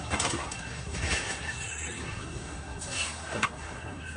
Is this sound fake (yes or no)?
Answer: yes